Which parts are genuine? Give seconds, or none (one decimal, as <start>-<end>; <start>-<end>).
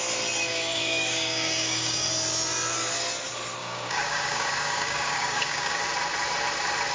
0.0-0.5; 2.1-3.6; 5.8-6.9